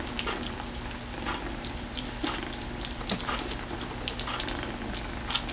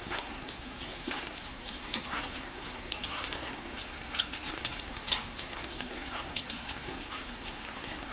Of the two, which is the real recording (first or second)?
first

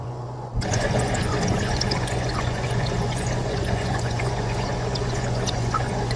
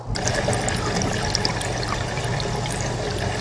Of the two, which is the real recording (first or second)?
second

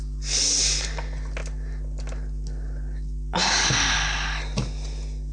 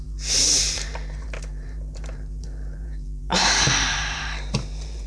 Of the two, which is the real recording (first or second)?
first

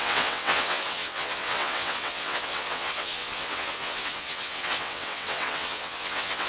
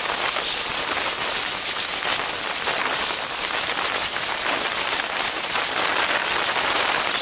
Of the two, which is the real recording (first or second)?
second